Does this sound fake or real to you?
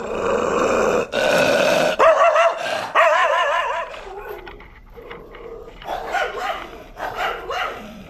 fake